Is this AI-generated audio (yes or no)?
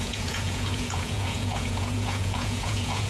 yes